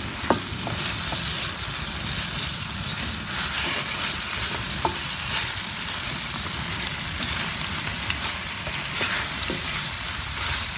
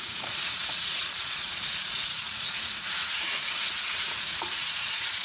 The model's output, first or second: second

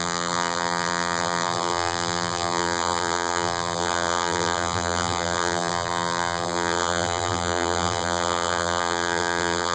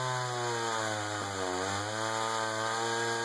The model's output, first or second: first